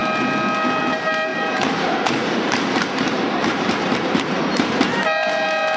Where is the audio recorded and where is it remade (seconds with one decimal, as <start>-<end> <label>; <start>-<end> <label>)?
0.0-1.3 recorded; 1.3-4.8 remade; 4.8-5.8 recorded